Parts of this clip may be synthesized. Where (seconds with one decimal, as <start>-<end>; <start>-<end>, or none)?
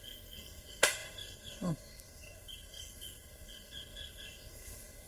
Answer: 0.0-5.1